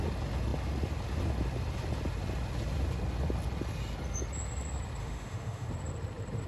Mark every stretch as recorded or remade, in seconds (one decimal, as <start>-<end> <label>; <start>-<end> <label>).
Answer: 0.0-5.0 recorded; 5.0-5.7 remade; 5.7-6.5 recorded

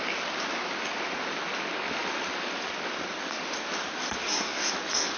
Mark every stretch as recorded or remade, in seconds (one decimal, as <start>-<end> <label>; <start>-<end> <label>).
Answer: 0.0-4.2 recorded; 4.2-4.7 remade; 4.7-5.2 recorded

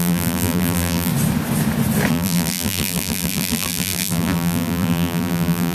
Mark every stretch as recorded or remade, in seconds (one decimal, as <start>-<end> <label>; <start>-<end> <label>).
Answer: 0.0-1.1 remade; 1.1-2.1 recorded; 2.1-5.7 remade

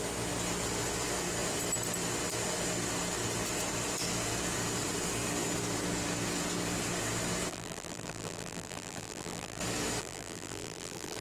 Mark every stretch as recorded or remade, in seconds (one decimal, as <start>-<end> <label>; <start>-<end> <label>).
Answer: 0.0-7.5 recorded; 7.5-9.6 remade; 9.6-10.0 recorded; 10.0-11.2 remade